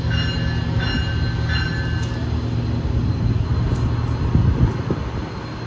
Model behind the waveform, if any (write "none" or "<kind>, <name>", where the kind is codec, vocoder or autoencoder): none